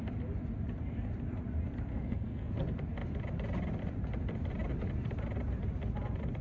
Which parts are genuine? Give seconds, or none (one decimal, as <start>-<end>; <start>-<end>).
0.0-1.9; 2.5-6.4